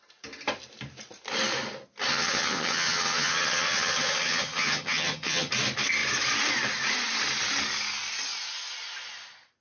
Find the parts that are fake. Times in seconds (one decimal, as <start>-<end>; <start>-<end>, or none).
2.1-5.5

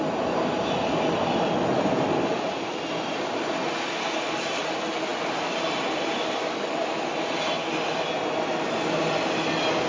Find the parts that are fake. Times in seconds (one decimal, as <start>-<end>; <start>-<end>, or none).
none

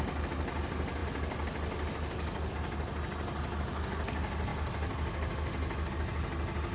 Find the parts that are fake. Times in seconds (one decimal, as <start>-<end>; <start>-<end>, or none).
none

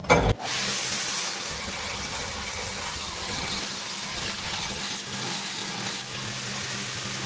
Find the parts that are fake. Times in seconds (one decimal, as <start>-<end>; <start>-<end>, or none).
1.5-3.6; 4.1-4.8